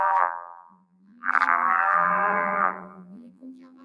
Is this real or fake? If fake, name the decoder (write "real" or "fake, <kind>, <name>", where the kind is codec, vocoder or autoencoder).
fake, vocoder, BigVGAN v2